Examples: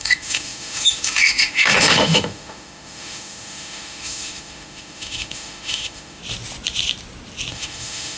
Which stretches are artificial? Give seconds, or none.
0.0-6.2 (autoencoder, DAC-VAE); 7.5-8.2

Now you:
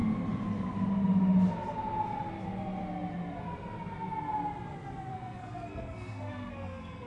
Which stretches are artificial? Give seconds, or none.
5.1-7.1 (codec, SNAC)

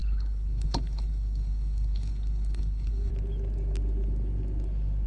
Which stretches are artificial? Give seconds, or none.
0.0-3.1 (codec, HILCodec)

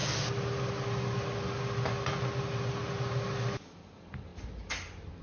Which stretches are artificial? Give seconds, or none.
none